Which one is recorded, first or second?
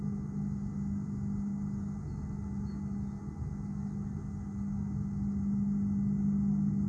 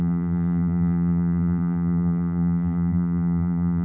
first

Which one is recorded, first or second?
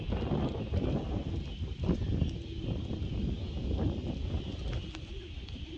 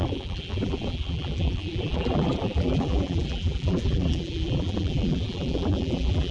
first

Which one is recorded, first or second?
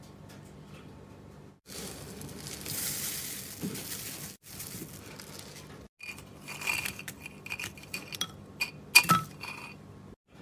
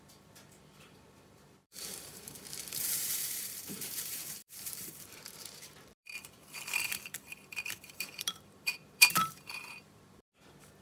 first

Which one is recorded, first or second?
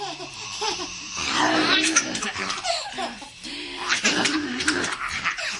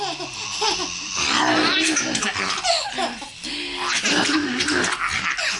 second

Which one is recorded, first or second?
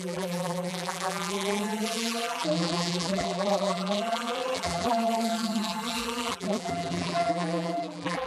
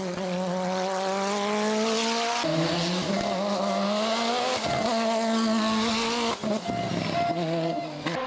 second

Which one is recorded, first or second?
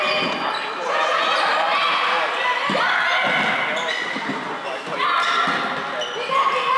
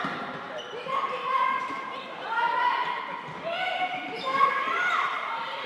first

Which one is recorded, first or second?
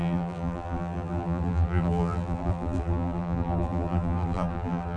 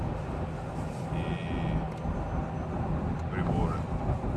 second